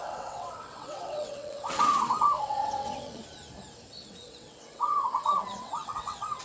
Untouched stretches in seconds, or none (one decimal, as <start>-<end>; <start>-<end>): 3.2-3.9